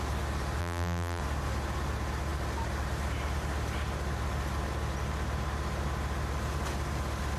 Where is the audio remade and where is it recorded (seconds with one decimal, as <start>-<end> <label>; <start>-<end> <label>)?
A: 0.0-0.6 recorded; 0.6-1.2 remade; 1.2-7.4 recorded